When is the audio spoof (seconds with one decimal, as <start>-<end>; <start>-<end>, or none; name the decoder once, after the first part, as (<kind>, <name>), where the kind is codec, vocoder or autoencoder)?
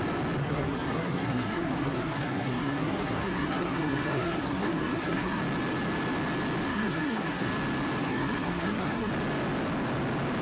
0.4-5.4 (codec, SNAC); 6.7-7.5; 8.0-9.1